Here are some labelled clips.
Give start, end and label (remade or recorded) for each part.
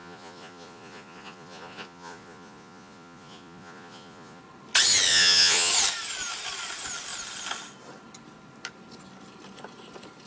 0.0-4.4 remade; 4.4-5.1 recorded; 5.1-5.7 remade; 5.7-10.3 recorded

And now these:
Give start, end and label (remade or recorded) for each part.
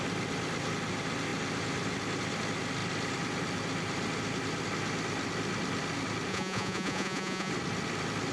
0.0-6.3 recorded; 6.3-7.5 remade; 7.5-8.3 recorded